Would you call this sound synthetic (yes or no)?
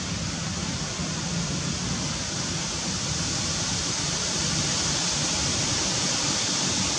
no